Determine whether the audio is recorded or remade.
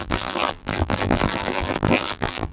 remade